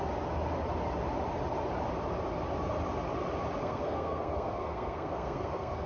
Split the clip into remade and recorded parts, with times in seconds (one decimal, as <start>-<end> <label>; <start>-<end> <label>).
0.0-3.6 recorded; 3.6-5.9 remade